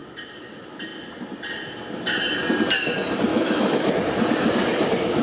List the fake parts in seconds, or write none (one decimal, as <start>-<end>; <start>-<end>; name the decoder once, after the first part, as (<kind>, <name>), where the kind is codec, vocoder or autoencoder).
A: 3.3-4.0 (autoencoder, DAC-VAE)